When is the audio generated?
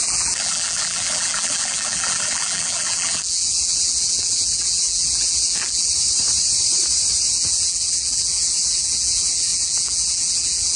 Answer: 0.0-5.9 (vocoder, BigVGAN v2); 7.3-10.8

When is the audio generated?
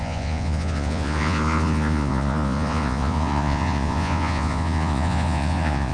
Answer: 0.0-5.9 (vocoder, Vocos)